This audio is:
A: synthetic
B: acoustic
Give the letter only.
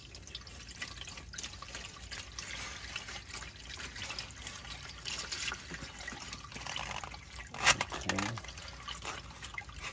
B